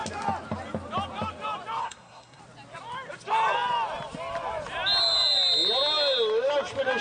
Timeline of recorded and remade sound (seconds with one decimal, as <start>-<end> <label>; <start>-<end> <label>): 0.0-1.8 recorded; 1.8-2.4 remade; 2.4-7.0 recorded